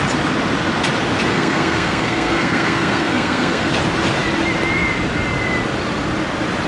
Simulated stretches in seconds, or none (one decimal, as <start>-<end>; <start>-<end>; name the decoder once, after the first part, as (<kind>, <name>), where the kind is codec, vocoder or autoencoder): 1.3-3.7 (codec, SNAC)